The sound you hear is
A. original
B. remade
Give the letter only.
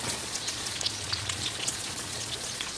B